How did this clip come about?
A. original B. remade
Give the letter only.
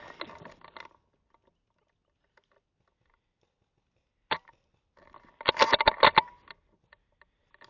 A